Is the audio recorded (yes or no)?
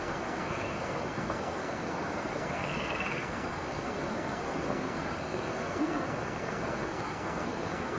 no